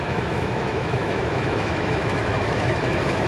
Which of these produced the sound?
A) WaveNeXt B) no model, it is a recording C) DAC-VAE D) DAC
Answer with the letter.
C